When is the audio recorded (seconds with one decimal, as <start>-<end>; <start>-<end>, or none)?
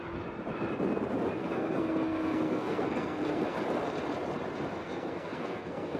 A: 0.0-1.4; 3.6-4.8